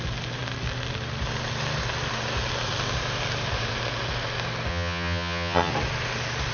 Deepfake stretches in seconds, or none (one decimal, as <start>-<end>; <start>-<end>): 4.7-5.7